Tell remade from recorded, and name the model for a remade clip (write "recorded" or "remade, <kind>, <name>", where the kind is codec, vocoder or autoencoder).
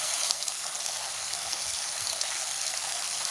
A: remade, codec, SNAC